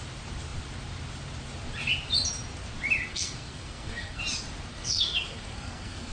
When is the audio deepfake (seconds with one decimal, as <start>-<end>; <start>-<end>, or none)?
3.1-4.2; 4.7-6.1

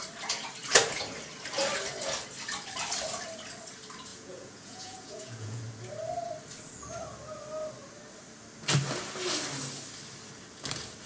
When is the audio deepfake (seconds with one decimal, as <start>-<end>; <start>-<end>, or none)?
4.1-5.6

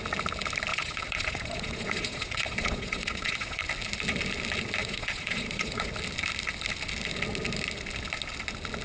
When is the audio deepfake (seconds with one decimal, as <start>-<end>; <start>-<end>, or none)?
0.7-3.6; 4.8-5.9

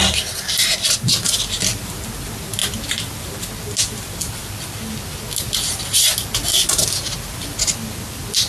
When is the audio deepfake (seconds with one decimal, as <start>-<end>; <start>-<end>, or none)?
none